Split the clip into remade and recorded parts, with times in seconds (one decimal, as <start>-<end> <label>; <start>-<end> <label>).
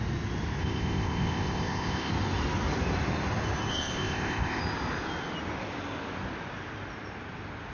0.0-0.6 recorded; 0.6-2.1 remade; 2.1-3.7 recorded; 3.7-4.6 remade; 4.6-7.7 recorded